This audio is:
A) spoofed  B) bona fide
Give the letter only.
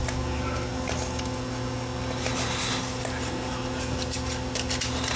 B